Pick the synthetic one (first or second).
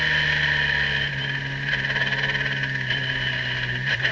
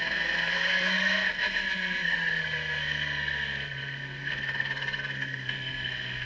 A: second